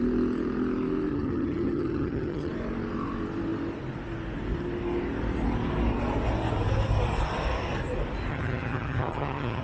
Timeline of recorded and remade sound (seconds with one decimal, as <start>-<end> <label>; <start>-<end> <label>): 0.0-1.1 recorded; 1.1-2.5 remade; 2.5-8.3 recorded; 8.3-9.6 remade